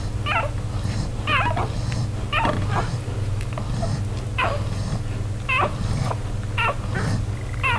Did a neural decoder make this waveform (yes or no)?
no